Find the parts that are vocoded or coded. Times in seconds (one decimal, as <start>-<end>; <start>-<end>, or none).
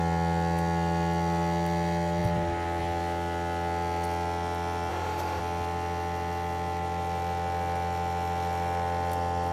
4.9-5.4